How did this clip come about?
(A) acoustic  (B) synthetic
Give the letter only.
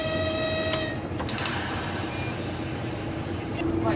A